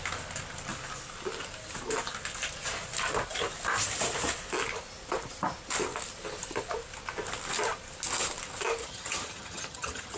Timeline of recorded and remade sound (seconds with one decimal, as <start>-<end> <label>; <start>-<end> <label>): 0.0-8.8 recorded; 8.8-10.2 remade